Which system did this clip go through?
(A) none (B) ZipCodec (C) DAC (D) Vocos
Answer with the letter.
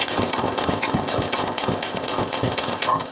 B